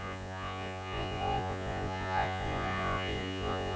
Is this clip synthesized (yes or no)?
yes